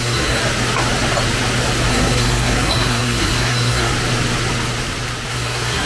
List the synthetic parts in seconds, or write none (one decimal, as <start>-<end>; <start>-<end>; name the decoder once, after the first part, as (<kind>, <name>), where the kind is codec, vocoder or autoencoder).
0.0-0.4 (codec, SNAC); 1.9-3.9; 5.3-5.9